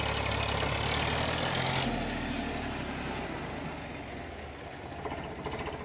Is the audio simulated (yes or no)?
no